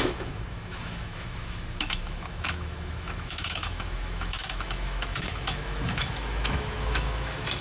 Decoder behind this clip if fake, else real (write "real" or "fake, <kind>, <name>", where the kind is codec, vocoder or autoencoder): fake, autoencoder, DAC-VAE